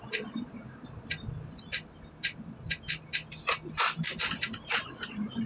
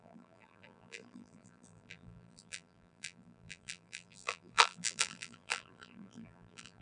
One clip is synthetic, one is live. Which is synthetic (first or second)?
second